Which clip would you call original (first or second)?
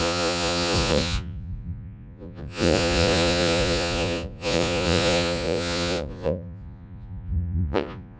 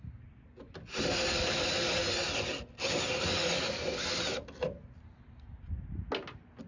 second